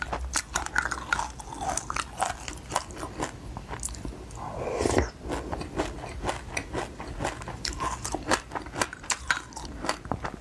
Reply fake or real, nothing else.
real